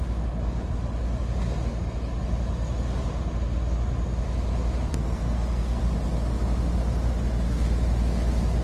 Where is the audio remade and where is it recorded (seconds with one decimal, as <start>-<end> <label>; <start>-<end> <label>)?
0.0-4.9 recorded; 4.9-5.8 remade; 5.8-8.6 recorded